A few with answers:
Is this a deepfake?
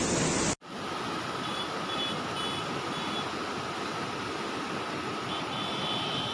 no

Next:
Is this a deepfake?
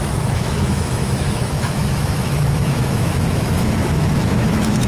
yes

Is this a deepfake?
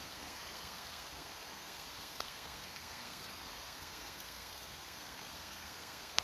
yes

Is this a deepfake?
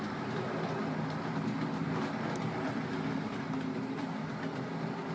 no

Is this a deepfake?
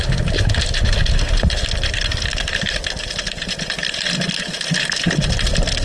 no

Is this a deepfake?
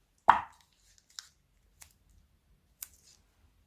no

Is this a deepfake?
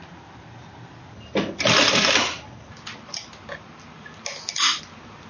no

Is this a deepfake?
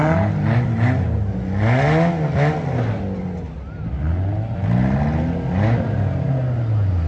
no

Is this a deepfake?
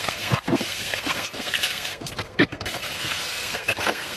yes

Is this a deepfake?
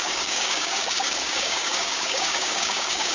yes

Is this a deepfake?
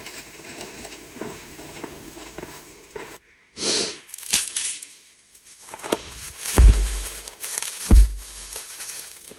yes